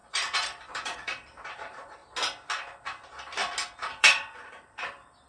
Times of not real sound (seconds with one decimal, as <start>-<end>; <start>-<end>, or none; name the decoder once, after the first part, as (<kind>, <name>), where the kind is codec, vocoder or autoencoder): 0.0-2.0 (vocoder, BigVGAN v2); 4.0-5.3